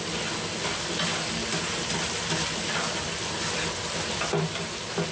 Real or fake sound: real